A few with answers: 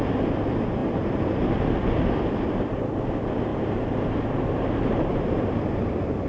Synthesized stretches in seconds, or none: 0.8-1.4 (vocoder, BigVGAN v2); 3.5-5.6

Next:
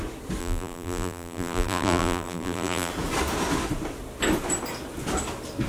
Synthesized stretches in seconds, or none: 0.4-2.9 (vocoder, BigVGAN v2)